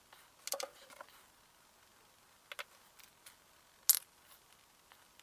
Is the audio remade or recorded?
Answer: recorded